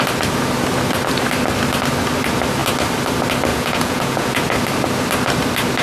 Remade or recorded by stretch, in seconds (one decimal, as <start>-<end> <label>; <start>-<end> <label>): 0.0-3.5 recorded; 3.5-4.3 remade; 4.3-5.8 recorded